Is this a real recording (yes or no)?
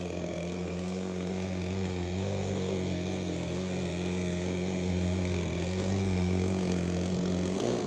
no